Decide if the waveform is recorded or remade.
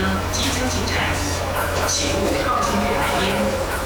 remade